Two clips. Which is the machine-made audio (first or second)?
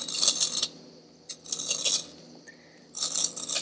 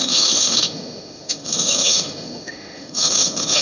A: second